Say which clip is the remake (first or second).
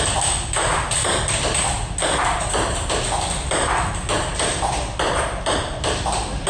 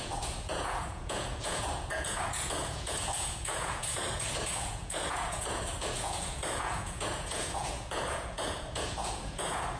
second